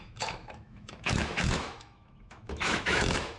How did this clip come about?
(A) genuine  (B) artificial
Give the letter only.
B